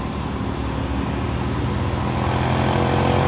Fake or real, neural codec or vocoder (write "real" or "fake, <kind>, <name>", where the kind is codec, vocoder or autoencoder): real